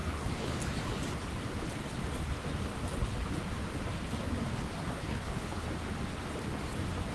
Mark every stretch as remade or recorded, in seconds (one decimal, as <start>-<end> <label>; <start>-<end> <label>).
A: 0.0-0.6 remade; 0.6-4.9 recorded; 4.9-5.7 remade; 5.7-7.1 recorded